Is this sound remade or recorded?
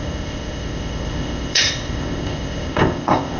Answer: remade